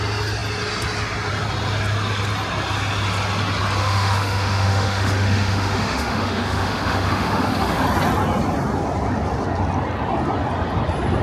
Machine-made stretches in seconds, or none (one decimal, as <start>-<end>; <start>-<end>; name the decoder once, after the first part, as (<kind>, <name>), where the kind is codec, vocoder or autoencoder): 3.8-7.8 (autoencoder, DAC-VAE)